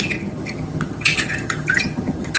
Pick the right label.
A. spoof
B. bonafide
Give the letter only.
A